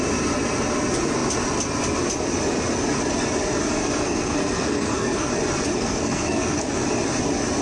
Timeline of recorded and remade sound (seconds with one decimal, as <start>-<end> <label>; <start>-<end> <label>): 0.0-3.8 recorded; 3.8-5.3 remade; 5.3-5.7 recorded; 5.7-6.6 remade; 6.6-7.6 recorded